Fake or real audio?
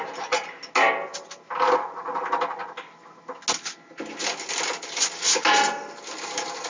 real